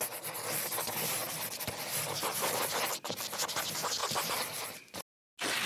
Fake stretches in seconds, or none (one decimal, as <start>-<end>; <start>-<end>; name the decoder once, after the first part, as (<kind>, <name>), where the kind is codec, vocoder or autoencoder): 4.0-5.0 (vocoder, BigVGAN v2)